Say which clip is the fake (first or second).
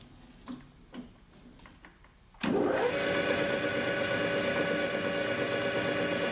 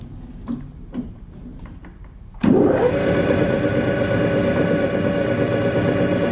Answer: second